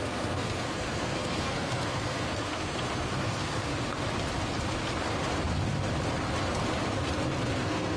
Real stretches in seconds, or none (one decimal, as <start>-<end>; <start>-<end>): 3.7-7.5